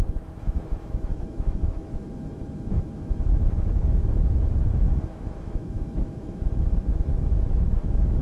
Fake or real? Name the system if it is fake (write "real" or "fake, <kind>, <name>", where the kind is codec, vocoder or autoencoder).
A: fake, autoencoder, DAC-VAE